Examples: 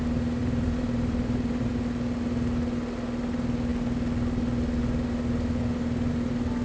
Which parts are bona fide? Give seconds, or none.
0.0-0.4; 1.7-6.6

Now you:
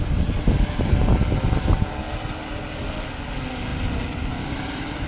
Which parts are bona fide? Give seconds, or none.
0.0-3.7

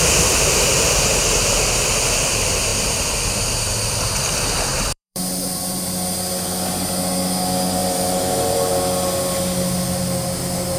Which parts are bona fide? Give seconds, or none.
0.0-4.7; 5.8-7.8; 8.7-10.8